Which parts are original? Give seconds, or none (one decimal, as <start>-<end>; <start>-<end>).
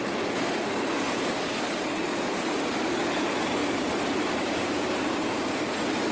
0.0-3.6; 5.5-6.1